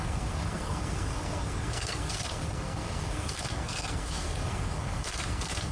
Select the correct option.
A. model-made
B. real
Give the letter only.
A